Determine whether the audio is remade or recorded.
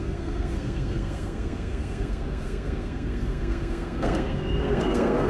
remade